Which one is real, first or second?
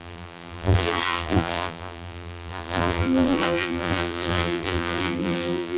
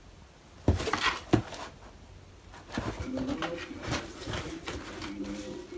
second